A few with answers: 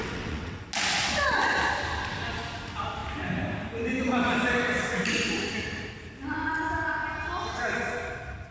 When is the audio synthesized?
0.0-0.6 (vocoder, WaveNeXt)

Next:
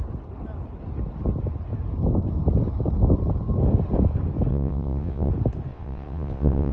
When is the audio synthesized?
4.5-5.3 (vocoder, WaveNeXt); 5.7-6.7

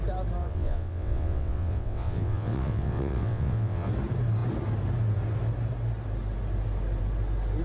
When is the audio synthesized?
0.4-3.9 (vocoder, WaveNeXt)

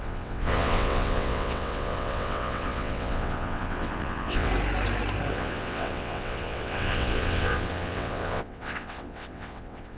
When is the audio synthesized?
0.0-4.5 (vocoder, WaveNeXt); 5.3-10.0